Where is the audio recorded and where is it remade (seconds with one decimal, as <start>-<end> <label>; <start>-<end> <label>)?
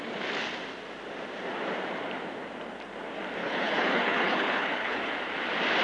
0.0-3.4 recorded; 3.4-5.1 remade; 5.1-5.8 recorded